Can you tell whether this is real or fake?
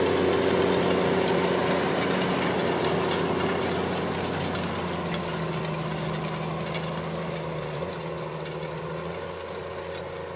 real